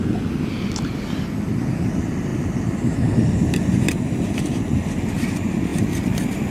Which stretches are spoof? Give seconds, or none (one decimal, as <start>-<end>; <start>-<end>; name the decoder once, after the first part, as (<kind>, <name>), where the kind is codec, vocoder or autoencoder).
2.3-4.5 (vocoder, BigVGAN v2); 5.7-6.5